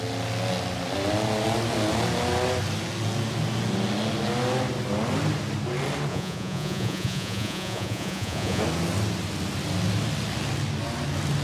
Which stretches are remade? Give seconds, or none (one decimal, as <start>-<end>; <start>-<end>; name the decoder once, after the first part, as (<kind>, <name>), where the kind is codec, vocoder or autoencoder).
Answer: 6.1-8.6 (vocoder, Vocos)